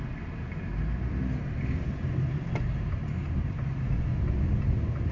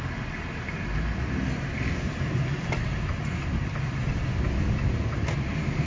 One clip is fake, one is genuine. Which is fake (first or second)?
second